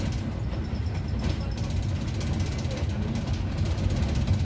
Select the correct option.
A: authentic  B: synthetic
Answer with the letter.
A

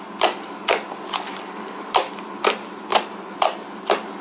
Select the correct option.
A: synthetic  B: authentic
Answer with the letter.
B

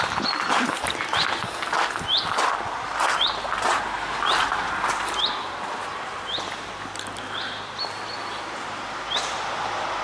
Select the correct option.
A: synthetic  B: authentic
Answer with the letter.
A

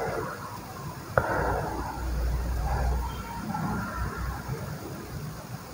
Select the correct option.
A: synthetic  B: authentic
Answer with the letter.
A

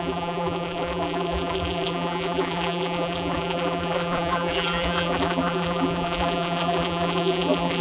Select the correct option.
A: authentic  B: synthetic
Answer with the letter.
B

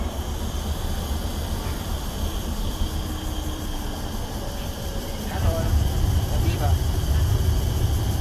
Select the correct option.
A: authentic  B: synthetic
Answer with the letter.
B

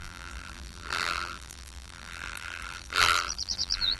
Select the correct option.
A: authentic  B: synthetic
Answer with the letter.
B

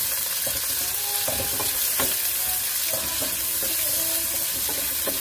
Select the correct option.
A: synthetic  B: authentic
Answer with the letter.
B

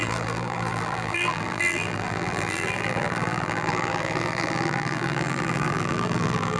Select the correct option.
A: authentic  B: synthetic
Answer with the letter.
B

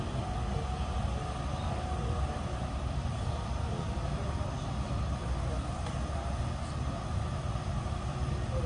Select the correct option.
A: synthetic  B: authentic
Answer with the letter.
B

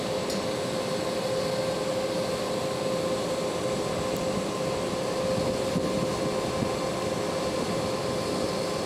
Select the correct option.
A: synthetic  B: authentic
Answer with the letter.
B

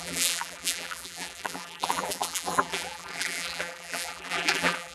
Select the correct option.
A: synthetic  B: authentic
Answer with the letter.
A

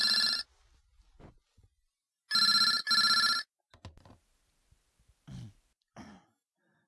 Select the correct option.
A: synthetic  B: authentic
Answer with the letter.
B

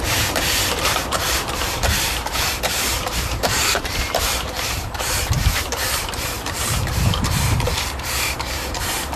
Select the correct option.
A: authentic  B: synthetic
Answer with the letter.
B